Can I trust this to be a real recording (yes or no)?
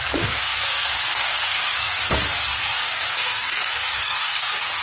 no